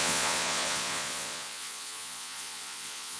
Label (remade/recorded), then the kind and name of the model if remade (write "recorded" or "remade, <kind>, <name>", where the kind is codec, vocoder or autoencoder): remade, vocoder, Vocos